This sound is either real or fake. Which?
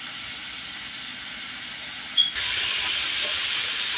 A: real